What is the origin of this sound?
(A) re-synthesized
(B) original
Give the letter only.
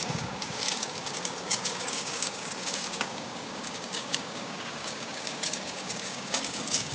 A